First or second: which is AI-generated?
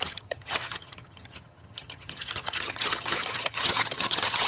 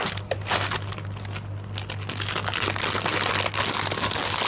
first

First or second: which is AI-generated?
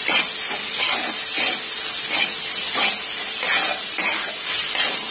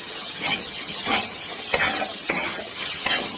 second